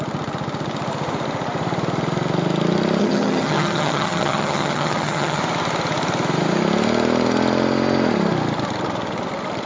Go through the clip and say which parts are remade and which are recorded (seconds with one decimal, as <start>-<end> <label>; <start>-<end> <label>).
0.0-3.0 recorded; 3.0-5.4 remade; 5.4-9.7 recorded